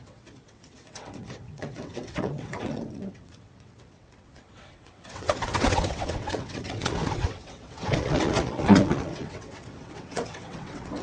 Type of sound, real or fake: fake